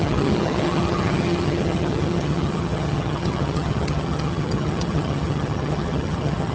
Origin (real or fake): fake